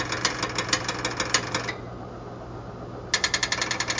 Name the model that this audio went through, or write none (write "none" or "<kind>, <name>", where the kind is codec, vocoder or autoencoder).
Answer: none